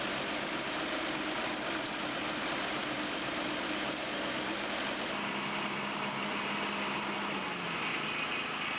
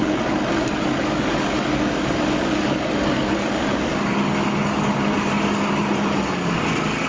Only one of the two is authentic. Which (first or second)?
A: first